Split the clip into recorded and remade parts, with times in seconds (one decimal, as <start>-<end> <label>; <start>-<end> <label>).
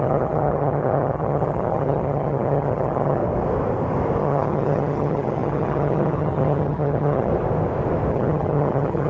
0.0-3.2 remade; 3.2-4.2 recorded; 4.2-7.3 remade; 7.3-8.1 recorded; 8.1-9.1 remade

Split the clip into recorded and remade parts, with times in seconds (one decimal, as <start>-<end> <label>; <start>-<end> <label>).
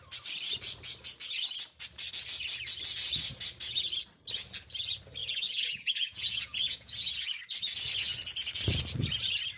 0.0-5.2 recorded; 5.2-7.4 remade; 7.4-9.6 recorded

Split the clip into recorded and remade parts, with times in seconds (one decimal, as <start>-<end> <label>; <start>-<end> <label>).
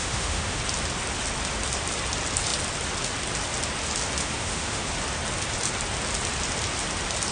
0.0-0.6 remade; 0.6-4.2 recorded; 4.2-4.9 remade; 4.9-7.3 recorded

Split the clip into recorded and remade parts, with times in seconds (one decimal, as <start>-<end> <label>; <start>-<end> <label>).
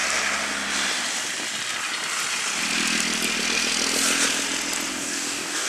0.0-4.9 recorded; 4.9-5.7 remade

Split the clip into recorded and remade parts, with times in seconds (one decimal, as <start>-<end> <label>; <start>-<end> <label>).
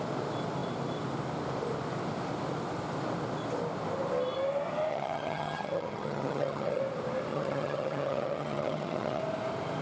0.0-4.9 recorded; 4.9-6.8 remade; 6.8-7.3 recorded; 7.3-9.2 remade; 9.2-9.8 recorded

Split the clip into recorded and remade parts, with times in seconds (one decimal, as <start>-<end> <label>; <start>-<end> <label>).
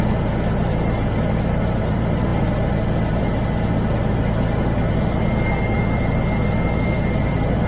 0.0-7.7 recorded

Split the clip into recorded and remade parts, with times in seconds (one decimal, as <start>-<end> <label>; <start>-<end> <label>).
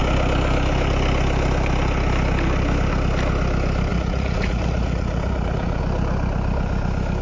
0.0-3.9 recorded; 3.9-5.8 remade; 5.8-7.2 recorded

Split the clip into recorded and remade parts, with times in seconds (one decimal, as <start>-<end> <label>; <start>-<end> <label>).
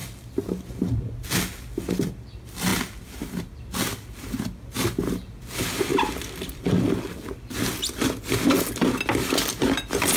0.0-10.2 recorded